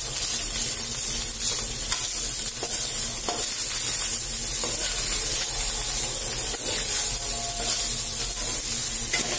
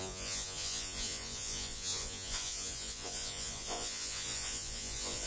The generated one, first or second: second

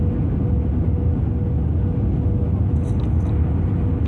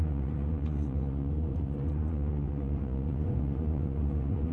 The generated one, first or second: second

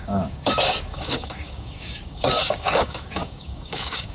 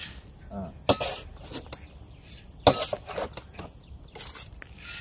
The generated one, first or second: first